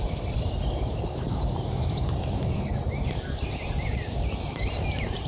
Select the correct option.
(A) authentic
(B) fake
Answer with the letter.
B